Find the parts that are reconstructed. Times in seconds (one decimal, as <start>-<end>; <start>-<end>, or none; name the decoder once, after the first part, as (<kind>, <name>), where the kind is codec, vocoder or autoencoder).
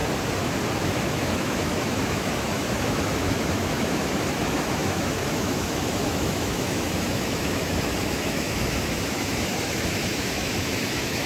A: 0.8-11.3 (autoencoder, DAC-VAE)